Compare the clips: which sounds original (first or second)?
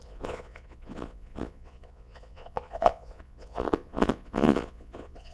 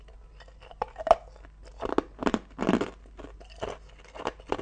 second